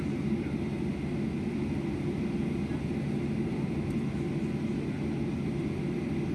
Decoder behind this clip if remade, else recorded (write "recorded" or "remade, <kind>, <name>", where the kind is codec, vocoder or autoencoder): recorded